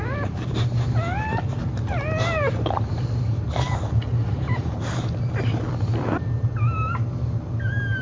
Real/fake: real